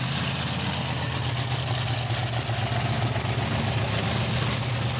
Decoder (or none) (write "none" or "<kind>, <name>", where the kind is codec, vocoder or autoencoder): none